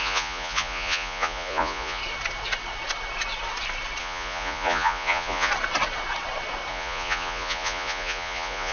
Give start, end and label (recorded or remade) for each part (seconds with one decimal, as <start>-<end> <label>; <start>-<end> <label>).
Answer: 0.0-2.0 remade; 2.0-4.0 recorded; 4.0-5.5 remade; 5.5-6.7 recorded; 6.7-8.7 remade